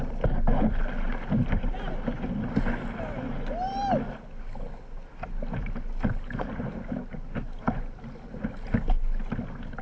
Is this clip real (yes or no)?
yes